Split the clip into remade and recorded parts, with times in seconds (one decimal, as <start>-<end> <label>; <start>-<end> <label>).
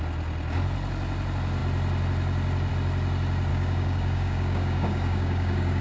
0.0-3.5 recorded; 3.5-5.8 remade